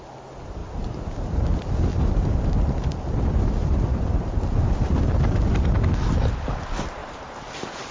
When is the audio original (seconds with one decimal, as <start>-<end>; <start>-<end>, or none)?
0.0-1.9; 4.6-7.0; 7.5-7.9